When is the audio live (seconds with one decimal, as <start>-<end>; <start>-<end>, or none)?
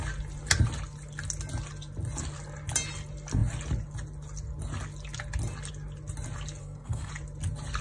0.0-6.6; 7.1-7.8